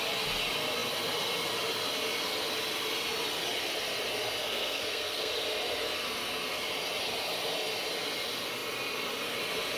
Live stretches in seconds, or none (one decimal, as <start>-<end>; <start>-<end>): 0.0-4.4; 5.3-9.8